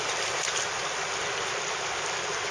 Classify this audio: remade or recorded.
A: recorded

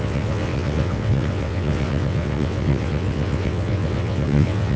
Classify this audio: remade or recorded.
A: remade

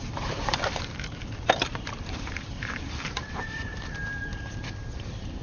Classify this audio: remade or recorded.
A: remade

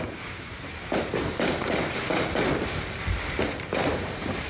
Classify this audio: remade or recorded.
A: remade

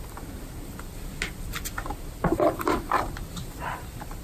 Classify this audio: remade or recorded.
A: remade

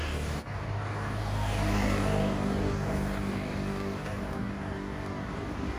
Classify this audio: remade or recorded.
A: remade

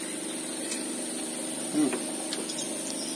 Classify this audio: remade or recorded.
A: recorded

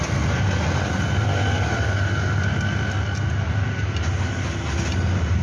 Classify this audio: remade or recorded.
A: recorded